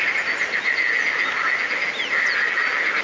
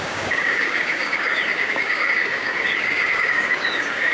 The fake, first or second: second